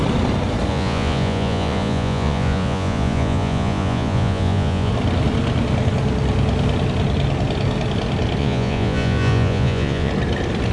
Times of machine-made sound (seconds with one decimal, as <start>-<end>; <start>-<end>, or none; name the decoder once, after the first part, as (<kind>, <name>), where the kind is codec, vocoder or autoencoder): 0.7-4.9 (vocoder, Vocos); 8.4-10.1